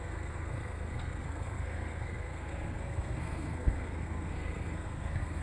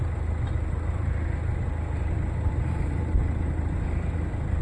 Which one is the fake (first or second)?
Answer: first